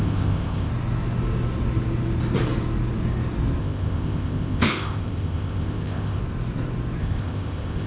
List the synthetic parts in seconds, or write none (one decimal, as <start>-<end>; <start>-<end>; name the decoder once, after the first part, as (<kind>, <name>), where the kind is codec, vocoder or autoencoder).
0.0-0.7 (codec, ZipCodec); 3.6-6.2; 7.0-7.9